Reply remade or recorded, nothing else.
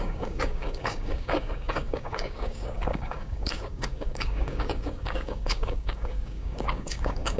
remade